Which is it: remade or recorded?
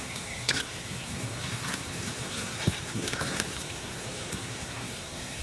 remade